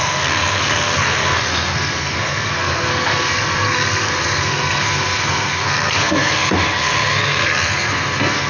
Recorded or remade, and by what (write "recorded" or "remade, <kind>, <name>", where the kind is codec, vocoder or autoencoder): remade, codec, SNAC